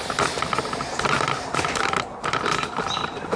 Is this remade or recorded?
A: recorded